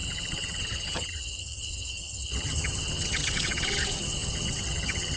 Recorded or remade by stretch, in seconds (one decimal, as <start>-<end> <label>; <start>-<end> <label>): 0.0-5.2 remade